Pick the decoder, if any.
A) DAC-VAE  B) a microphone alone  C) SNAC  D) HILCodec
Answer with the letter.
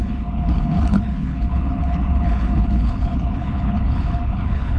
D